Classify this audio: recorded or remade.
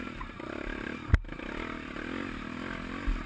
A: recorded